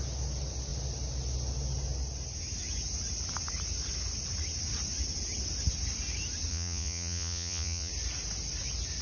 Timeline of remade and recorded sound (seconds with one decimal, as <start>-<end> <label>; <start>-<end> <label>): 0.0-6.5 recorded; 6.5-7.9 remade; 7.9-9.0 recorded